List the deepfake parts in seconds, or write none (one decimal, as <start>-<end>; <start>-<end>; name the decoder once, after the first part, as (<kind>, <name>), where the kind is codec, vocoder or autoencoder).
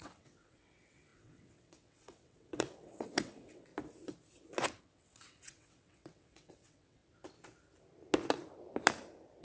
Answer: 0.0-3.7 (vocoder, WaveNeXt); 4.8-7.0